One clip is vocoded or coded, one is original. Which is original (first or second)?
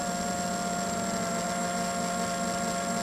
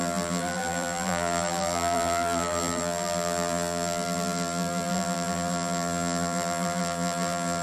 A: first